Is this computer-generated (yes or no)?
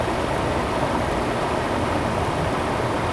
no